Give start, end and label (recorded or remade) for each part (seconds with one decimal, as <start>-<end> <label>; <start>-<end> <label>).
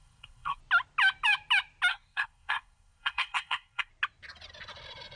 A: 0.0-0.6 remade; 0.6-1.9 recorded; 1.9-3.9 remade; 3.9-5.2 recorded